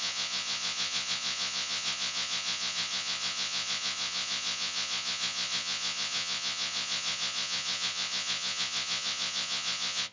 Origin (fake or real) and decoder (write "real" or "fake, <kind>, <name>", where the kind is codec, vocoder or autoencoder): fake, vocoder, Vocos